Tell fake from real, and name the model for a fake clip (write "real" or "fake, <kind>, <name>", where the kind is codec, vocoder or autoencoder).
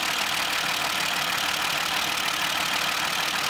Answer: real